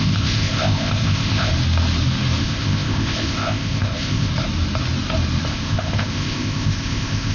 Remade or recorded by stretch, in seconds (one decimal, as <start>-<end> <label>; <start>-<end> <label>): 0.0-1.5 remade; 1.5-2.4 recorded; 2.4-4.3 remade; 4.3-5.5 recorded; 5.5-7.3 remade